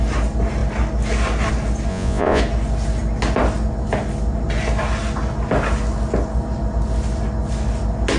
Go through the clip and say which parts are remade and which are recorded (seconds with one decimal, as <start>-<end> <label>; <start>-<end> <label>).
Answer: 0.0-1.9 recorded; 1.9-2.4 remade; 2.4-8.2 recorded